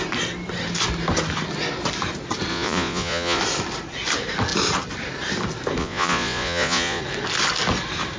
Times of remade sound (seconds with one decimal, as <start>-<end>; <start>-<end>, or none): 2.5-3.4; 5.8-7.0